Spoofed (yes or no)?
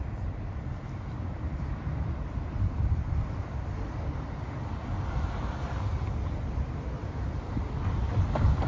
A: yes